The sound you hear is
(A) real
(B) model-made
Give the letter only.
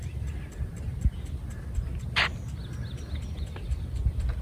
A